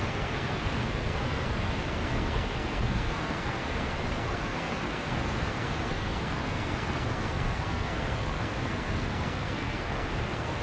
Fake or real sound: fake